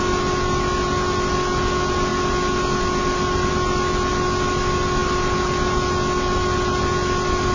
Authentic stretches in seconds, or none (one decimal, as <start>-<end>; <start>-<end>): 0.0-7.5